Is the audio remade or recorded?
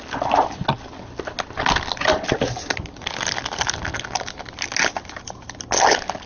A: recorded